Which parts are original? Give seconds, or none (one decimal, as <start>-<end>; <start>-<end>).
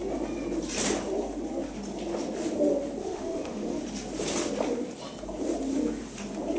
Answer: 0.0-3.0; 3.8-6.6